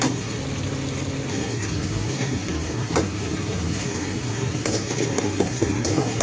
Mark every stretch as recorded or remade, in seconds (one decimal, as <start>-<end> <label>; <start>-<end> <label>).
0.0-0.4 remade; 0.4-1.3 recorded; 1.3-6.2 remade